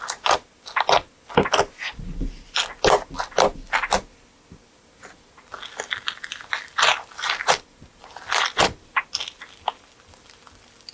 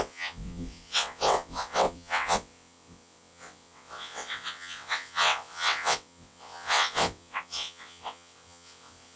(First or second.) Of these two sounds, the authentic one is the first